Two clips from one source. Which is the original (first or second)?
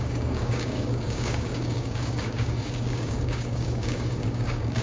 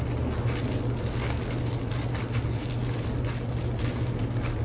second